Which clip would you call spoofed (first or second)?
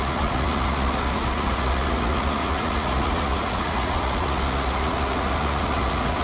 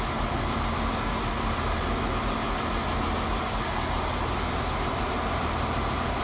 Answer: first